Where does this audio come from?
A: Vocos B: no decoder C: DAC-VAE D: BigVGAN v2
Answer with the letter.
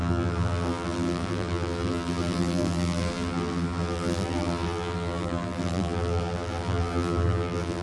D